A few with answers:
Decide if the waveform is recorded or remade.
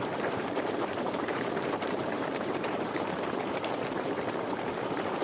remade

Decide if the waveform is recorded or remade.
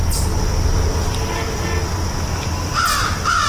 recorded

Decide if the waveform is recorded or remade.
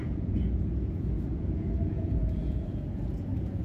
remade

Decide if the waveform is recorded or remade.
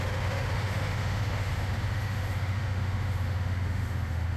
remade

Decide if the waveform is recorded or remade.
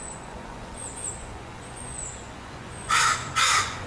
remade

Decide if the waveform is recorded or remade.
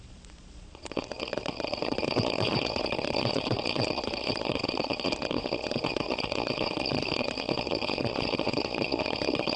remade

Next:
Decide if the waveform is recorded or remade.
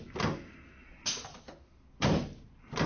recorded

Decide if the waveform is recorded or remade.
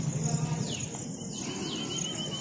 recorded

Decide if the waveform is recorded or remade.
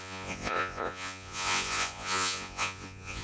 remade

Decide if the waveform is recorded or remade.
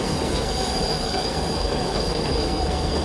remade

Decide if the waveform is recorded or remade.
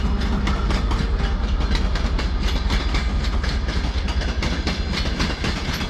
recorded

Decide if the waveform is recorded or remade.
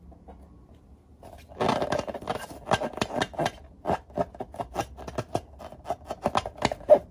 recorded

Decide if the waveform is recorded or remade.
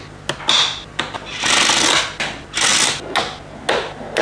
recorded